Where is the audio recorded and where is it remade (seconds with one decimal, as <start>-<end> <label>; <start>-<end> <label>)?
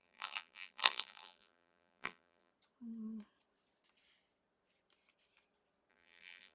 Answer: 0.0-2.5 remade; 2.5-5.9 recorded; 5.9-6.5 remade